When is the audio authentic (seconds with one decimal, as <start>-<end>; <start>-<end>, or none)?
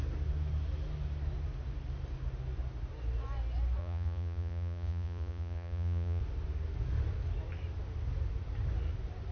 0.0-3.8; 6.2-9.3